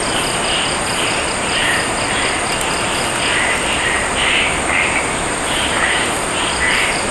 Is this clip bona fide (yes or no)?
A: yes